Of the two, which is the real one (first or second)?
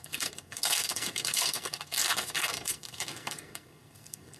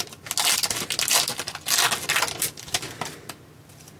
second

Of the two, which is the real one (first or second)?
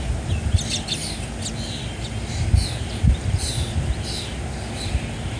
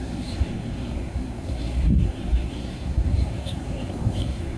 first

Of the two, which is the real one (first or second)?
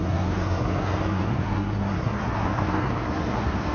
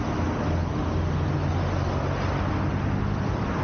second